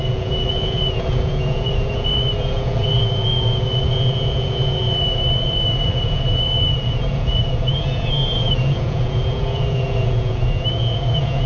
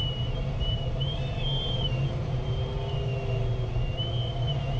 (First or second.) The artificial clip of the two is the first